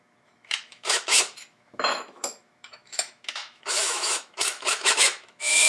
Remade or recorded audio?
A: remade